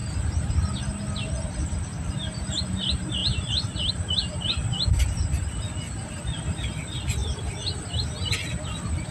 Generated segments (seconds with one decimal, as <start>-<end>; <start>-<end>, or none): 3.2-3.9